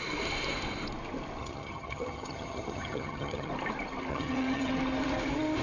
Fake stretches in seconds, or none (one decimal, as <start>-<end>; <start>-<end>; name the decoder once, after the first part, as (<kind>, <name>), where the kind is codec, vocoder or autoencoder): 1.4-3.5 (vocoder, HiFi-GAN); 4.1-4.7